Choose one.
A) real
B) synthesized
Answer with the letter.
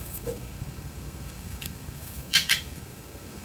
B